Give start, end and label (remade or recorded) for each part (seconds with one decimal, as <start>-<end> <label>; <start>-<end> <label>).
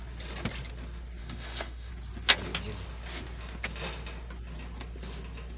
0.0-1.2 recorded; 1.2-1.9 remade; 1.9-5.6 recorded